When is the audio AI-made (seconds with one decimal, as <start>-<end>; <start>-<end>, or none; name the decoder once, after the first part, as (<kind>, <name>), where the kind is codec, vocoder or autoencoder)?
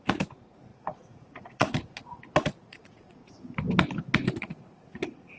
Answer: 0.0-2.0 (vocoder, Vocos); 2.7-3.2; 4.4-5.4